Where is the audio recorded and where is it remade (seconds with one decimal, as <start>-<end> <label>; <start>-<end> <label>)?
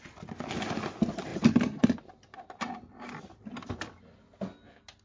0.0-1.3 recorded; 1.3-3.8 remade; 3.8-5.0 recorded